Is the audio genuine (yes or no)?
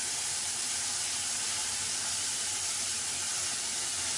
yes